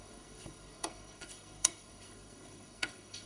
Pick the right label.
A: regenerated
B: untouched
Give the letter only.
A